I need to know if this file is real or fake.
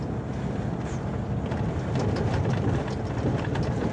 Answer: real